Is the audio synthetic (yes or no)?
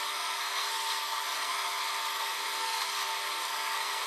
yes